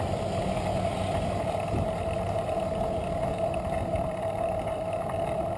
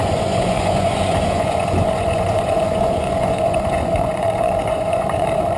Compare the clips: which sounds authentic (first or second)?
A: first